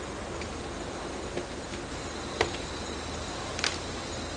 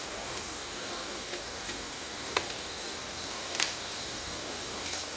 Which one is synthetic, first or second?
second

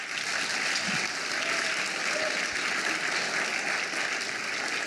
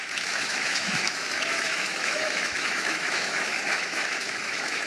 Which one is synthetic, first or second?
second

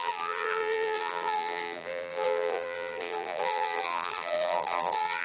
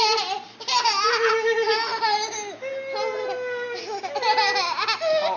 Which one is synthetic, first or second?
first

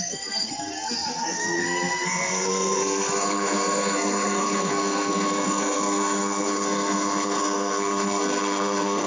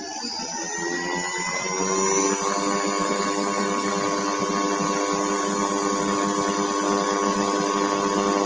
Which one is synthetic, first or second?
first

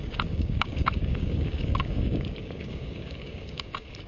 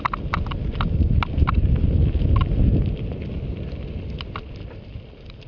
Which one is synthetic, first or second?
first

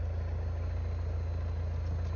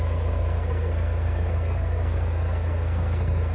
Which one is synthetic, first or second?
second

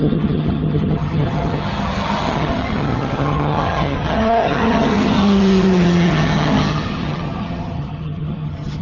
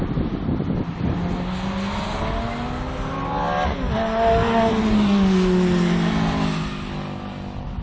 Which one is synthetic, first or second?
first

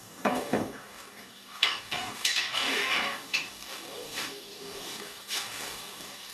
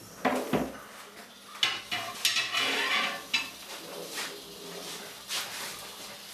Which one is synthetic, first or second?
first